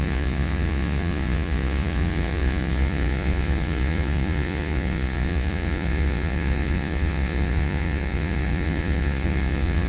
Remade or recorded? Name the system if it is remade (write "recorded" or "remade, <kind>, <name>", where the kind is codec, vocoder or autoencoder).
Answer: remade, vocoder, Vocos